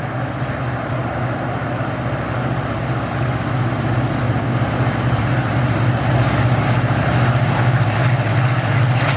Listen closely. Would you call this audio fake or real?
real